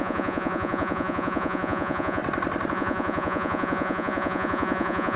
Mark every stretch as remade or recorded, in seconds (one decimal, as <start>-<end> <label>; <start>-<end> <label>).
0.0-2.2 remade; 2.2-2.7 recorded; 2.7-5.2 remade